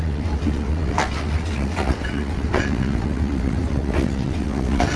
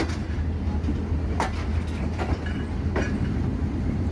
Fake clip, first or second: first